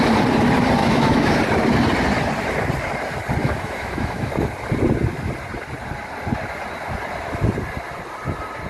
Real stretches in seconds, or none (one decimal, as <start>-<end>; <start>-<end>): 0.0-0.8; 1.4-3.4; 4.3-8.7